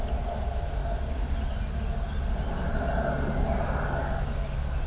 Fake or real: real